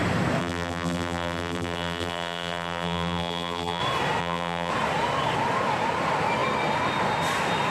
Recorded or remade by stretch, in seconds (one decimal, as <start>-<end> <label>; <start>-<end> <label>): 0.0-0.4 recorded; 0.4-3.8 remade; 3.8-4.2 recorded; 4.2-4.7 remade; 4.7-7.7 recorded